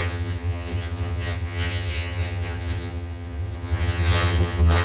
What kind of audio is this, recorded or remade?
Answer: remade